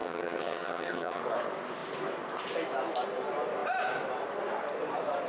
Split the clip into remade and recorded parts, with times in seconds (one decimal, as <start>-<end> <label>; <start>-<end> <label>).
0.0-1.2 remade; 1.2-5.3 recorded